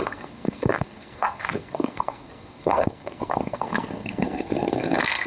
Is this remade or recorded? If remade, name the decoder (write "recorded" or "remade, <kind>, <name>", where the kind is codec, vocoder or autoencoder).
remade, codec, SNAC